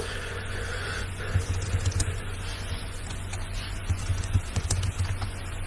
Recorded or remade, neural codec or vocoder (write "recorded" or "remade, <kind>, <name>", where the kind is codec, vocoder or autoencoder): remade, vocoder, Vocos